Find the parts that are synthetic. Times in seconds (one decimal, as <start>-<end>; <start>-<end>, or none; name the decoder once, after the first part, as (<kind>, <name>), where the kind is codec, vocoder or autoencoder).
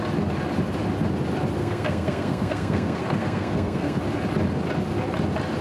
1.6-4.0 (codec, SNAC)